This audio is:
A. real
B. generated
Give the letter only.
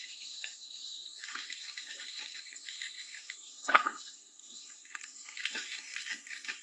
B